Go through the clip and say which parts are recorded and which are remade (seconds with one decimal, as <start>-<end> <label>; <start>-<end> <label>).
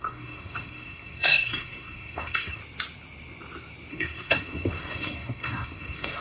0.0-2.6 remade; 2.6-3.9 recorded; 3.9-6.2 remade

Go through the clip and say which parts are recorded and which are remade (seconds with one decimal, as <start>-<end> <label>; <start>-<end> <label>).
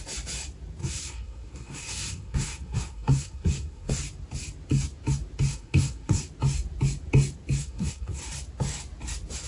0.0-0.8 recorded; 0.8-3.9 remade; 3.9-5.5 recorded; 5.5-6.2 remade; 6.2-7.6 recorded; 7.6-8.2 remade; 8.2-9.5 recorded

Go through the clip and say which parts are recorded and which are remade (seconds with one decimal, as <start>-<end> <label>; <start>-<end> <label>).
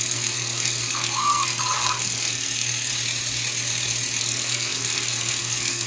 0.0-2.9 remade; 2.9-4.2 recorded; 4.2-5.9 remade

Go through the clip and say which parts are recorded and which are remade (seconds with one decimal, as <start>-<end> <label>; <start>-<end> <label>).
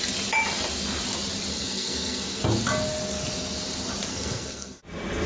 0.0-1.5 recorded; 1.5-2.4 remade; 2.4-4.1 recorded; 4.1-4.8 remade; 4.8-5.3 recorded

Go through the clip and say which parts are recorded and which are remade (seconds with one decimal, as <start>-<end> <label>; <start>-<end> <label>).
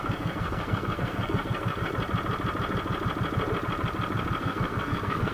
0.0-1.9 remade; 1.9-4.4 recorded; 4.4-5.3 remade